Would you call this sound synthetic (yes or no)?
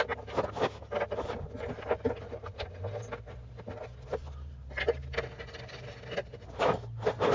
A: no